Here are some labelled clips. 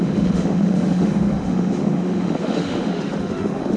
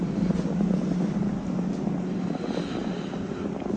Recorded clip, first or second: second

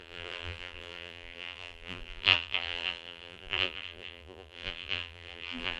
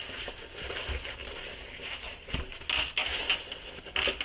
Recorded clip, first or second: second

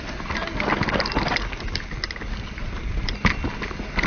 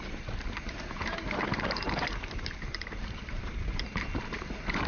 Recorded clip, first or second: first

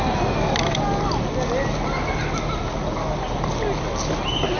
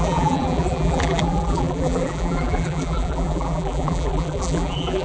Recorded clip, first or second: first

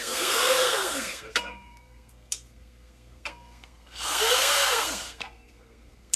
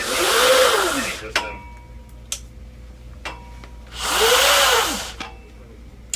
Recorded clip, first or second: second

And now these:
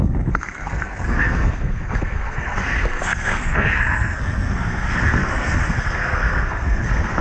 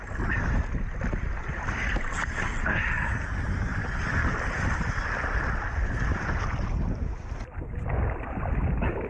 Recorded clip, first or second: second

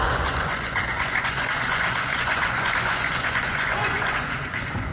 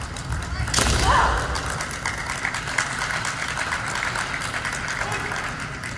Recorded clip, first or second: second